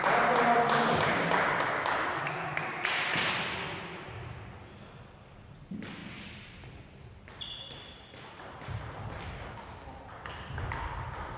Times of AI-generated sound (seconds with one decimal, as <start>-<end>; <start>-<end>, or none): none